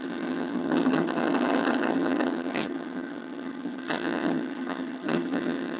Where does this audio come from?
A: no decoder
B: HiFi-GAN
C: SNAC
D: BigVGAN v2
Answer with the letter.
B